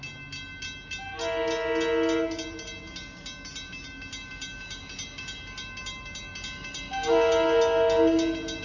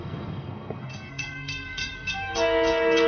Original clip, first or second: first